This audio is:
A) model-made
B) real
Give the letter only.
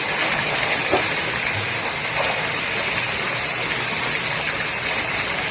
B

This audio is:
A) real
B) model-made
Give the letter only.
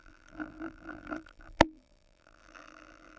B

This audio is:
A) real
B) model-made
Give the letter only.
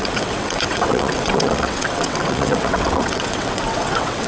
B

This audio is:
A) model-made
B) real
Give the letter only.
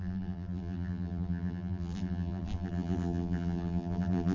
A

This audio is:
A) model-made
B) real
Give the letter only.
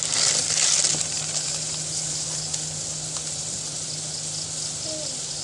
B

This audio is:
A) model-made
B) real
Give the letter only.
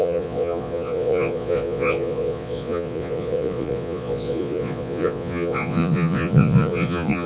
A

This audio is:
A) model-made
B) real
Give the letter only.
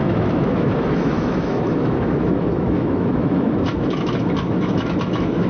A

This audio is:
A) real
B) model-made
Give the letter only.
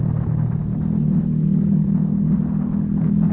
A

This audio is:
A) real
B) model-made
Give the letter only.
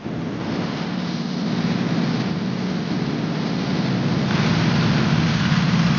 A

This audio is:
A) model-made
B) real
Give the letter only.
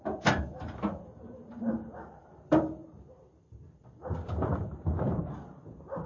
A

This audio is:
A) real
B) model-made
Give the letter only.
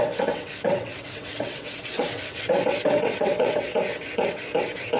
B